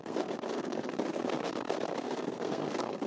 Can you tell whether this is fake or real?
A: fake